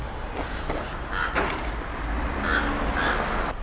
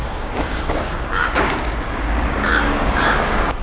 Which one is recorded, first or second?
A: first